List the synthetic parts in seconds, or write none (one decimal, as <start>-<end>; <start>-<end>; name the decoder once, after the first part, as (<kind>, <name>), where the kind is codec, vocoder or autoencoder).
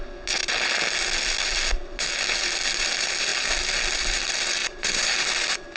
4.6-5.2 (vocoder, BigVGAN v2)